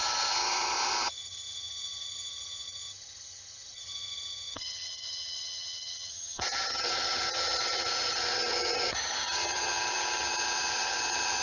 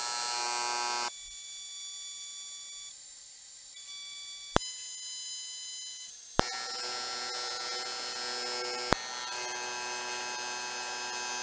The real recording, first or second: second